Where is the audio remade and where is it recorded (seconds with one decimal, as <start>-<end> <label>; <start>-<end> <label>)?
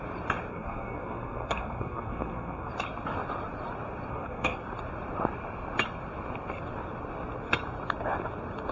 0.0-0.5 recorded; 0.5-2.7 remade; 2.7-4.1 recorded; 4.1-4.6 remade; 4.6-8.7 recorded